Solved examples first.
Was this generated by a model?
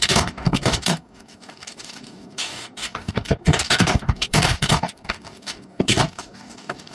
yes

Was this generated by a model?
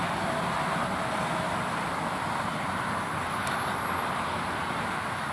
no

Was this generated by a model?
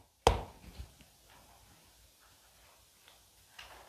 no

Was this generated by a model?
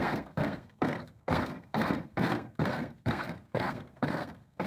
yes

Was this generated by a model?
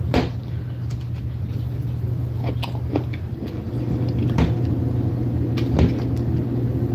no